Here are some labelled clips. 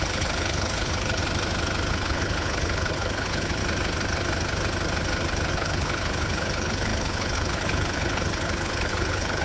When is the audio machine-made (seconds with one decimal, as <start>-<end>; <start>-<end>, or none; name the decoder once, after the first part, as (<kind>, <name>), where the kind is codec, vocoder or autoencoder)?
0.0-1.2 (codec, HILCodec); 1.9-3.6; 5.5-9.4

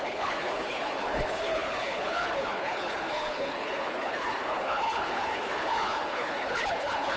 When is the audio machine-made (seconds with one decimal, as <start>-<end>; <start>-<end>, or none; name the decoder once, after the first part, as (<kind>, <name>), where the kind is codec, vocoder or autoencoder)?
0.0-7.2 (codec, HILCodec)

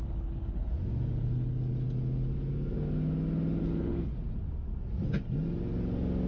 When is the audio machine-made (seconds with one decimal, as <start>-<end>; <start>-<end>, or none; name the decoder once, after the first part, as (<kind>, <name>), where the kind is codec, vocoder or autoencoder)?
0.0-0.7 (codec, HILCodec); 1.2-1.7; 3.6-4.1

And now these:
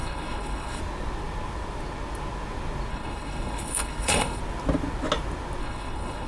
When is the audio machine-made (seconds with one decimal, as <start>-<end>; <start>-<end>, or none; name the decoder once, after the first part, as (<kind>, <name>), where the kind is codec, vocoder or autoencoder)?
0.0-0.8 (codec, HILCodec); 2.9-4.4; 5.6-6.3